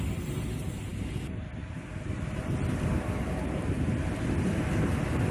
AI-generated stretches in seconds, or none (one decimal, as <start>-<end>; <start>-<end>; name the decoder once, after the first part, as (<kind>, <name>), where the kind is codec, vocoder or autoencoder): none